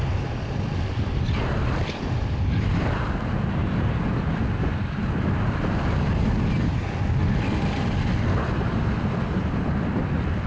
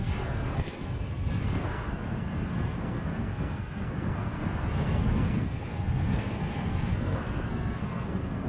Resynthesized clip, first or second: second